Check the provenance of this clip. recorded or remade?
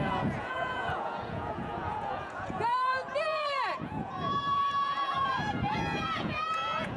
remade